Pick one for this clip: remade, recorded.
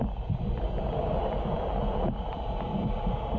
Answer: recorded